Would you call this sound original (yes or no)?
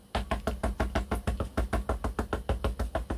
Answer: yes